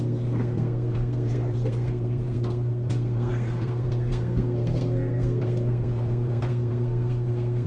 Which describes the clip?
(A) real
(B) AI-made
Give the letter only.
B